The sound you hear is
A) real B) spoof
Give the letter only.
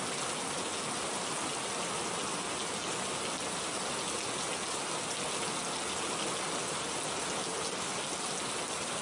A